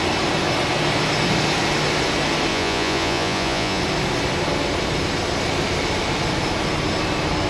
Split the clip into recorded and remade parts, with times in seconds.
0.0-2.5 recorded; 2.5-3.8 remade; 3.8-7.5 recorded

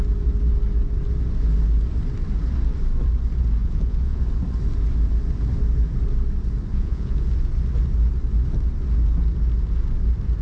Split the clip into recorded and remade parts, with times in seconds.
0.0-3.6 recorded; 3.6-4.2 remade; 4.2-6.7 recorded; 6.7-7.3 remade; 7.3-10.4 recorded

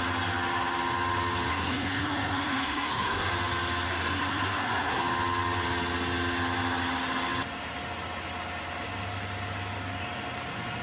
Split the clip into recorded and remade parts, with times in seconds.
0.0-1.5 recorded; 1.5-3.3 remade; 3.3-3.9 recorded; 3.9-5.0 remade; 5.0-10.8 recorded

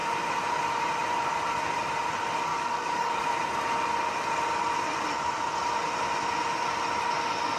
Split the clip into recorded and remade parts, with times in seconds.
0.0-2.5 recorded; 2.5-3.2 remade; 3.2-7.6 recorded